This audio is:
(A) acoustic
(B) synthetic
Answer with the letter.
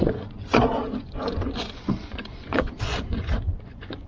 B